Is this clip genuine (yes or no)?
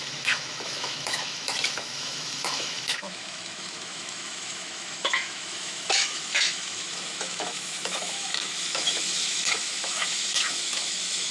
no